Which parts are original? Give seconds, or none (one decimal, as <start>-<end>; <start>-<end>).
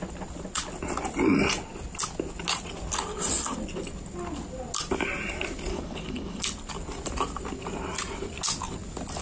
0.0-5.7; 6.4-9.2